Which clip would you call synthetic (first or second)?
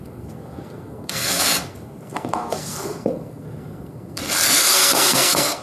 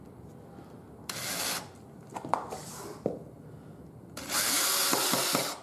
first